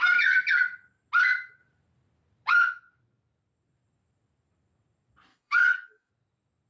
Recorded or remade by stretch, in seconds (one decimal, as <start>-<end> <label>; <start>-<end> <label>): 0.0-5.3 recorded; 5.3-6.1 remade; 6.1-6.7 recorded